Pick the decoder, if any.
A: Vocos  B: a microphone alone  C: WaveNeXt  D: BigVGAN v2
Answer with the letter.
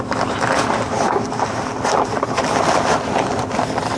B